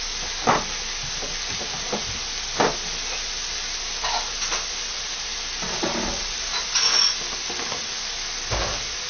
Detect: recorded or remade recorded